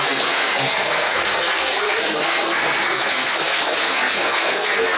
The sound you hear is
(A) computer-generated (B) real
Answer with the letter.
A